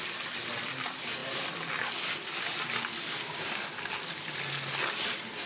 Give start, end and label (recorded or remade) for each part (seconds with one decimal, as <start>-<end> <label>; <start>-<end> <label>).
0.0-5.5 recorded